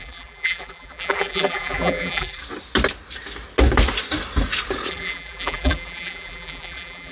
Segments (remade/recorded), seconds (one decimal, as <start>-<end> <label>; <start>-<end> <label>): 0.0-2.4 remade; 2.4-4.9 recorded; 4.9-7.1 remade

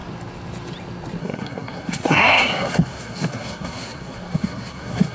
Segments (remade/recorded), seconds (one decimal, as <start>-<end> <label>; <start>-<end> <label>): 0.0-1.2 recorded; 1.2-5.1 remade

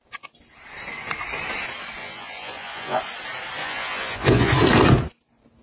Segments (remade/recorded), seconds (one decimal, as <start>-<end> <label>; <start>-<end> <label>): 0.0-2.0 recorded; 2.0-3.0 remade; 3.0-3.6 recorded; 3.6-4.5 remade; 4.5-5.6 recorded

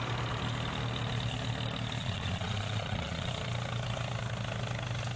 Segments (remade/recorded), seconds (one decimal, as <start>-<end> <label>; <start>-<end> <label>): 0.0-2.0 recorded; 2.0-3.3 remade; 3.3-5.2 recorded

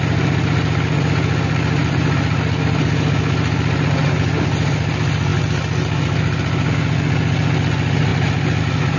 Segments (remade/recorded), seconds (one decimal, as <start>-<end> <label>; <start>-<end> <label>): 0.0-9.0 recorded

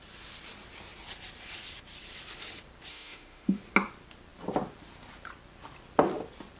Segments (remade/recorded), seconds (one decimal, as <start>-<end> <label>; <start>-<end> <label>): 0.0-2.9 recorded; 2.9-3.6 remade; 3.6-6.6 recorded

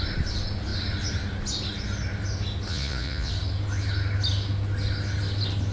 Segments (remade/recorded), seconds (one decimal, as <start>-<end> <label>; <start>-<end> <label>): 0.0-2.7 recorded; 2.7-3.3 remade; 3.3-5.7 recorded

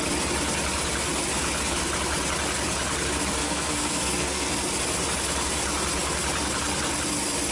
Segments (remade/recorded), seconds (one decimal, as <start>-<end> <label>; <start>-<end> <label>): 0.0-3.4 recorded; 3.4-4.5 remade; 4.5-7.5 recorded